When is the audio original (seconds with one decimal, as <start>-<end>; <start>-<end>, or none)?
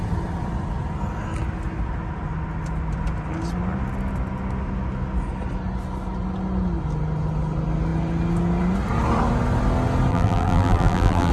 0.0-10.1